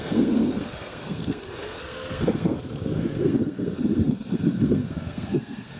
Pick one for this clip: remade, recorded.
remade